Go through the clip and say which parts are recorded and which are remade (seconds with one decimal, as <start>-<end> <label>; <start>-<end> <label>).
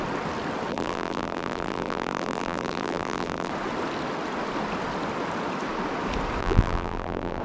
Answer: 0.0-0.7 recorded; 0.7-3.5 remade; 3.5-6.4 recorded; 6.4-7.4 remade